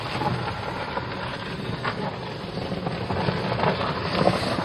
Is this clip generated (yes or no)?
no